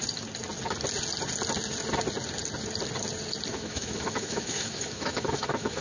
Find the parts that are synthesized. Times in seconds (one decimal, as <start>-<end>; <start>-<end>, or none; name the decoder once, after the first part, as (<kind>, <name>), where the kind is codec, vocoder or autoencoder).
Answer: 3.5-5.8 (autoencoder, DAC-VAE)